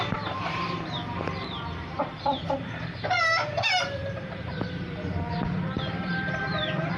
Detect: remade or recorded remade